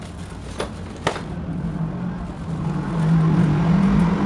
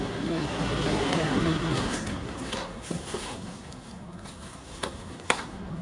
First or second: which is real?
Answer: first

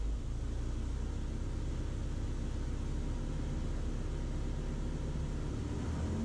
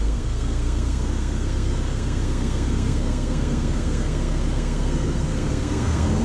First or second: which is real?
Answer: first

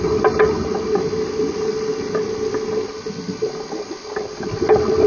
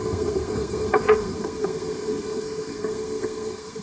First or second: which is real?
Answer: first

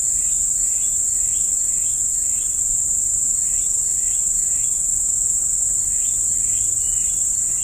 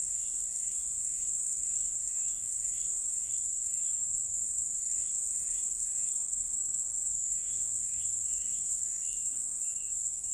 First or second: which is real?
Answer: first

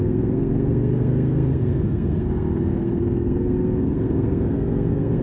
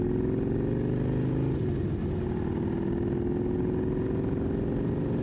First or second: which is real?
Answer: second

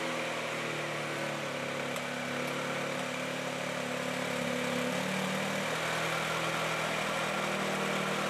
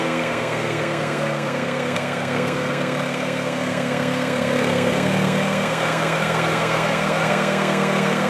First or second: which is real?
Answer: first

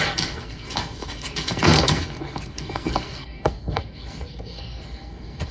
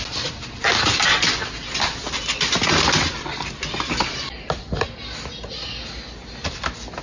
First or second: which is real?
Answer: second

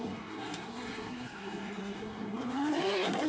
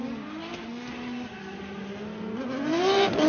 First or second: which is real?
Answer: second